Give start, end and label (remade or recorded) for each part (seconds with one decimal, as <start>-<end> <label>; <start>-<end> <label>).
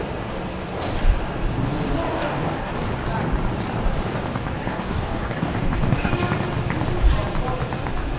0.0-2.0 recorded; 2.0-2.7 remade; 2.7-4.7 recorded; 4.7-6.1 remade; 6.1-8.2 recorded